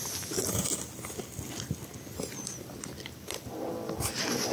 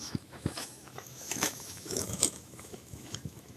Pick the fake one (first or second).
second